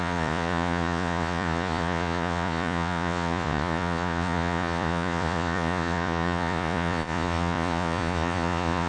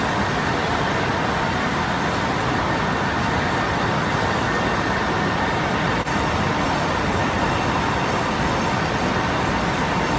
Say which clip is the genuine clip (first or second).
second